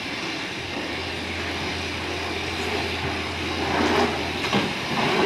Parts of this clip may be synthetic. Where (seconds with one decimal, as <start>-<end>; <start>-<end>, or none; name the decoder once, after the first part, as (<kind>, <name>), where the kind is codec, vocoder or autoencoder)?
0.0-1.0 (vocoder, BigVGAN v2); 4.2-5.3